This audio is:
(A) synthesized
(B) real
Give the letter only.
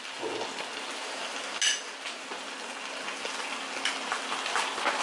B